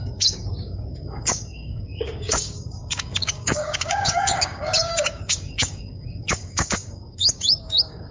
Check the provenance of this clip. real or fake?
fake